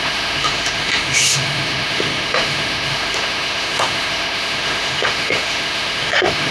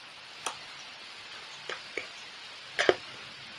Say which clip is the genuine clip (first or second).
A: second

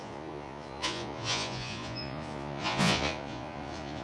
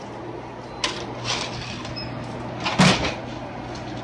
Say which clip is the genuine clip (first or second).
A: second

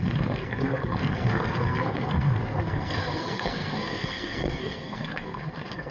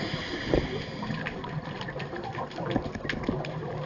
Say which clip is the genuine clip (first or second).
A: second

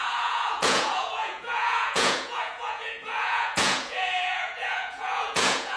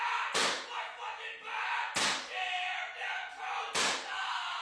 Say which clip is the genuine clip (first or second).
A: second